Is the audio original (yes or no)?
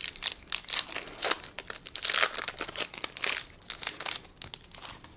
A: yes